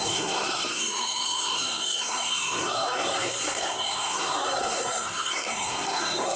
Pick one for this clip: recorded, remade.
remade